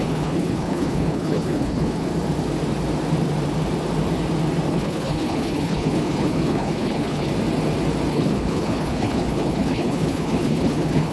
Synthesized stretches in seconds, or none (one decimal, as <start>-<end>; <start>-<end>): 0.0-2.1; 4.7-7.3; 8.1-11.1